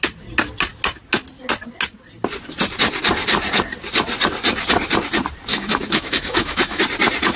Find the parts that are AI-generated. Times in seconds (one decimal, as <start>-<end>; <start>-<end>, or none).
5.5-6.8